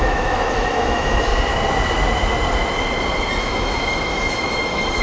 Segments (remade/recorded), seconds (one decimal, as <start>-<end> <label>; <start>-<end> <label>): 0.0-1.3 remade; 1.3-3.4 recorded; 3.4-5.0 remade